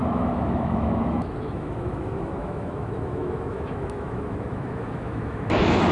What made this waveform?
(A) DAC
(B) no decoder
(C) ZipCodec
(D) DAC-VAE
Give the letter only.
D